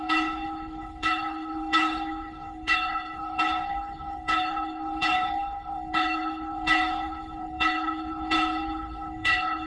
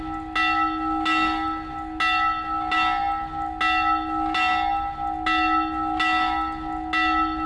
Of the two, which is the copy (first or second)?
first